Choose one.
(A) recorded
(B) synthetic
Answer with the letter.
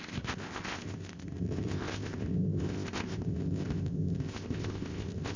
B